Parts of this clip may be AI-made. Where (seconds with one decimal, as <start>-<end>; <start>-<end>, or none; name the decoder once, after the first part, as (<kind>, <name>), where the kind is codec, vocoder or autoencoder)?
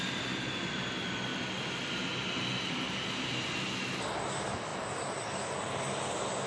none